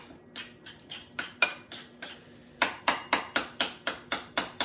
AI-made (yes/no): no